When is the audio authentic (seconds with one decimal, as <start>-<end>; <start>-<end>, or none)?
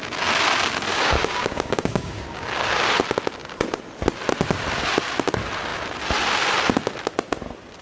0.0-0.9; 3.0-7.8